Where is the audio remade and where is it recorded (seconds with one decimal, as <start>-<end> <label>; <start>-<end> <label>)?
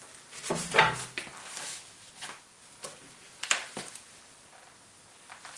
0.0-1.4 recorded; 1.4-2.4 remade; 2.4-5.6 recorded